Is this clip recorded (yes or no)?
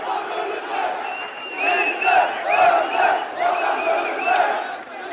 yes